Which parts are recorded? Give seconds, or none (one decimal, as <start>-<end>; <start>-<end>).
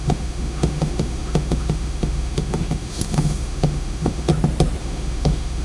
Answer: 4.3-4.8